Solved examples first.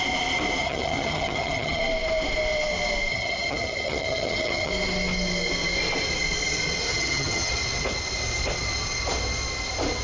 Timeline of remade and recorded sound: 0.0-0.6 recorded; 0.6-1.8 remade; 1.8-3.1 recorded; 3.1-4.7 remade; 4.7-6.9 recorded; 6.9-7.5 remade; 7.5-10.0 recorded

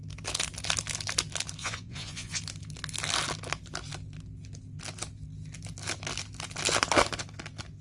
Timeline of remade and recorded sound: 0.0-1.6 recorded; 1.6-2.4 remade; 2.4-7.8 recorded

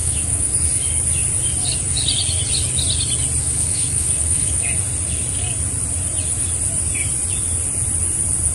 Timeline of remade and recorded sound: 0.0-0.6 remade; 0.6-3.4 recorded; 3.4-4.6 remade; 4.6-8.5 recorded

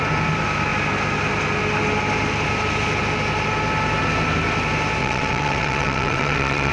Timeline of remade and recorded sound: 0.0-5.0 recorded; 5.0-6.7 remade

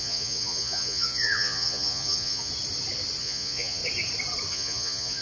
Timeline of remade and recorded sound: 0.0-2.5 remade; 2.5-3.2 recorded; 3.2-3.8 remade; 3.8-4.5 recorded; 4.5-5.2 remade

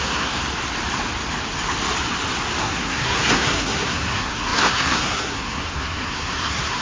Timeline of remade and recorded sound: 0.0-0.4 remade; 0.4-2.6 recorded; 2.6-6.8 remade